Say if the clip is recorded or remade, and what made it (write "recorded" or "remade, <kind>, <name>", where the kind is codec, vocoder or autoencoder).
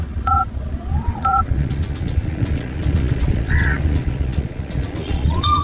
remade, vocoder, Vocos